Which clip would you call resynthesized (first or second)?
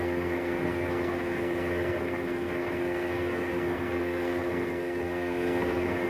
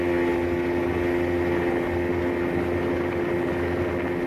first